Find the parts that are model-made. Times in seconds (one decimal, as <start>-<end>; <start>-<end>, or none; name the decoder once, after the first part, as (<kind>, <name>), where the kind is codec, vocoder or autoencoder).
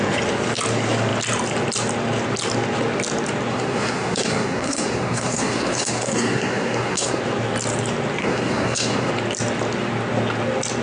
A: 3.5-7.2 (codec, SNAC); 8.2-9.1